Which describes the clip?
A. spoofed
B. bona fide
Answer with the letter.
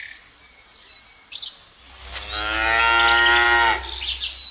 B